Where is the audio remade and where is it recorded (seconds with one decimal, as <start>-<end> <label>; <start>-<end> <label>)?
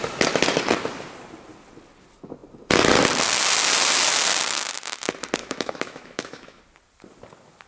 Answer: 0.0-5.4 recorded; 5.4-6.6 remade; 6.6-7.7 recorded